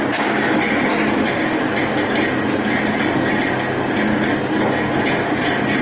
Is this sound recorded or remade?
recorded